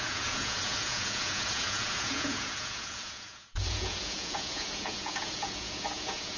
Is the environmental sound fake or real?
fake